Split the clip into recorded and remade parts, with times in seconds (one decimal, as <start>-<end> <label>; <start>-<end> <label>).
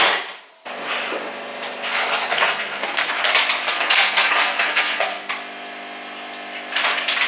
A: 0.0-2.3 recorded; 2.3-3.1 remade; 3.1-3.7 recorded; 3.7-5.3 remade; 5.3-7.3 recorded